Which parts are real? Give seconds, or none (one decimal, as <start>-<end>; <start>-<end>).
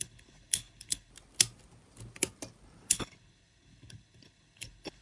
1.1-2.9